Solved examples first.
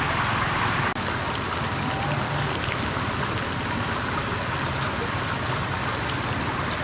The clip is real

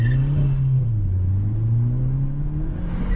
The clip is real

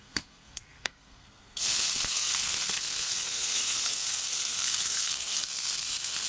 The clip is fake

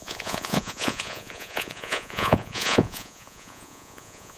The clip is fake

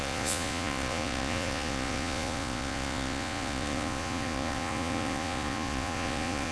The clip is fake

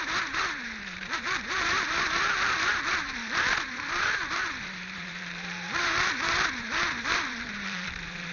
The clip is fake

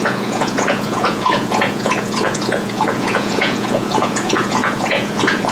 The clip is fake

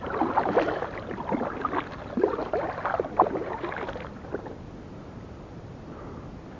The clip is real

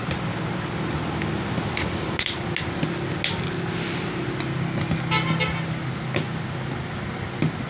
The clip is real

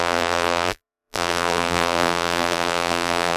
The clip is fake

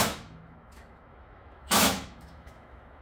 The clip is fake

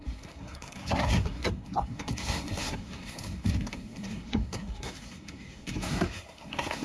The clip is fake